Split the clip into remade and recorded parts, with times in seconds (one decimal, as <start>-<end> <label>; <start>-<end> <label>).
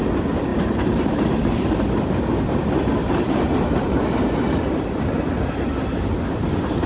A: 0.0-0.5 recorded; 0.5-1.9 remade; 1.9-3.0 recorded; 3.0-5.7 remade; 5.7-6.9 recorded